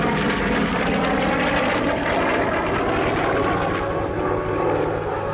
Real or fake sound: real